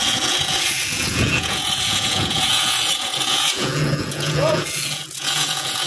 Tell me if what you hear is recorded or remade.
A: remade